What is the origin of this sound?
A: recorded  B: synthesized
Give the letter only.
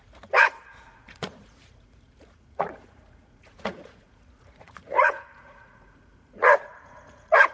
B